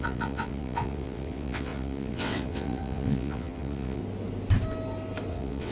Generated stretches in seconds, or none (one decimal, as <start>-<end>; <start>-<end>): 0.0-4.0; 5.3-5.7